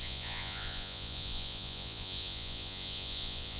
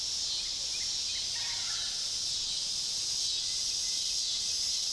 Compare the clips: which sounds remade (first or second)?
first